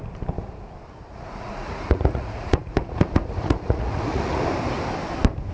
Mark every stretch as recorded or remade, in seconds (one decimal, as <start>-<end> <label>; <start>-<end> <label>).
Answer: 0.0-1.1 recorded; 1.1-4.4 remade; 4.4-5.5 recorded